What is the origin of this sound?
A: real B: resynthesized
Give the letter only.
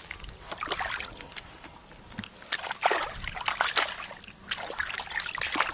A